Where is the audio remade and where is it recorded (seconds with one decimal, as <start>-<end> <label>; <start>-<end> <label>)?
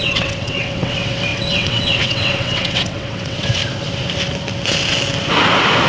0.0-3.6 remade; 3.6-5.9 recorded